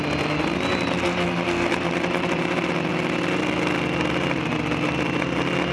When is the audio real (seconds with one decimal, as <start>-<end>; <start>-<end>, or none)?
0.0-5.7